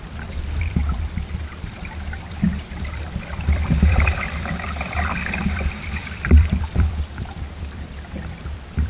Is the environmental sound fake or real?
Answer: fake